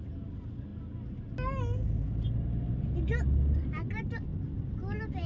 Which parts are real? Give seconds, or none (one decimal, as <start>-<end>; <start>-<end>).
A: 0.0-5.3